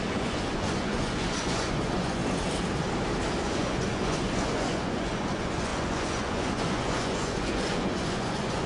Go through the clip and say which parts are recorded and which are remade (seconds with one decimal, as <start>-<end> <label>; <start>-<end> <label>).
0.0-2.2 remade; 2.2-3.4 recorded; 3.4-8.7 remade